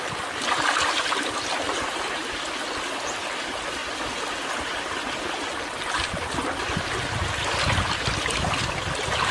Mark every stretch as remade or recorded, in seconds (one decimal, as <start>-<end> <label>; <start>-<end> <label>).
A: 0.0-9.3 recorded